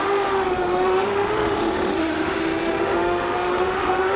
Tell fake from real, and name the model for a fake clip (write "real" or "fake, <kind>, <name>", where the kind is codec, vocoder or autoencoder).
fake, autoencoder, DAC-VAE